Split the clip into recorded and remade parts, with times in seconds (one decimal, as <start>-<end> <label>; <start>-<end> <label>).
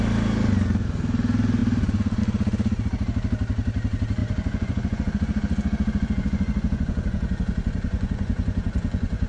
0.0-4.2 recorded; 4.2-9.3 remade